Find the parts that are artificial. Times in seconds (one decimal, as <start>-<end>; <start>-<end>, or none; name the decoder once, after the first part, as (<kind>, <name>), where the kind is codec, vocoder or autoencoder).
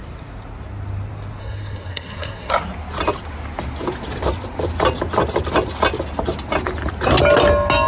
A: 1.4-2.5 (codec, SNAC)